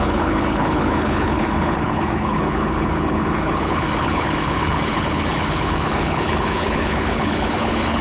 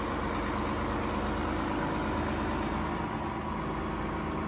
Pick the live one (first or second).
second